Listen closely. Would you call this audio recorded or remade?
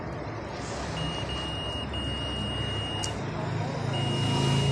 recorded